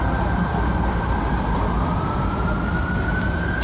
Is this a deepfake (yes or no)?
no